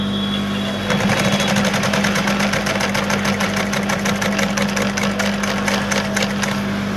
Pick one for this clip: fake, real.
real